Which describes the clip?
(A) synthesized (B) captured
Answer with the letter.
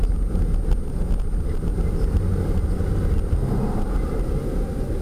B